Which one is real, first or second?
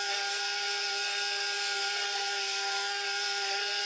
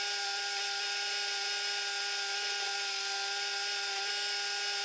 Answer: second